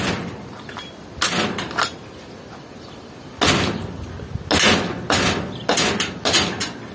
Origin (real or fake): real